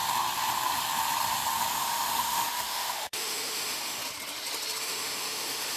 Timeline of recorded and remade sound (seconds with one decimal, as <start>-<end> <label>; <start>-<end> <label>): 0.0-1.7 recorded; 1.7-4.0 remade; 4.0-4.8 recorded; 4.8-5.8 remade